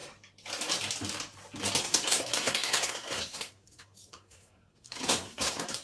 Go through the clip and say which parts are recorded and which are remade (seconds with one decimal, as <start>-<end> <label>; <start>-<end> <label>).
0.0-1.8 recorded; 1.8-5.8 remade

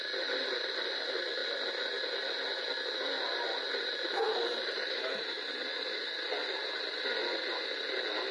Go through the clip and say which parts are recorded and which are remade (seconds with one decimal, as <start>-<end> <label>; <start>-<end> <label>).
0.0-8.3 recorded

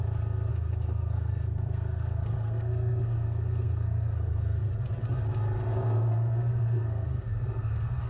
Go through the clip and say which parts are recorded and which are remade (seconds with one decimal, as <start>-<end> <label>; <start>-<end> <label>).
0.0-0.5 recorded; 0.5-4.7 remade; 4.7-5.7 recorded; 5.7-8.1 remade

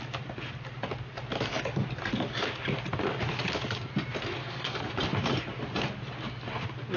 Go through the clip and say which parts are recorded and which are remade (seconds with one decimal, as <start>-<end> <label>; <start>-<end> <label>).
0.0-4.4 recorded; 4.4-4.9 remade; 4.9-7.0 recorded